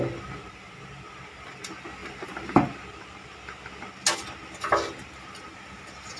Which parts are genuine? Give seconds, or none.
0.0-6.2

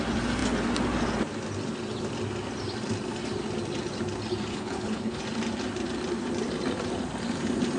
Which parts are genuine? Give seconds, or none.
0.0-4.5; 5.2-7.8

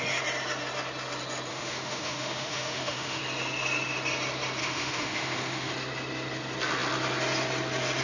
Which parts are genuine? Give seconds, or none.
0.0-1.5; 3.2-4.6; 5.7-8.0

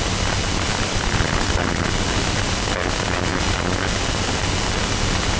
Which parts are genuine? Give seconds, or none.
0.0-0.7; 1.6-5.4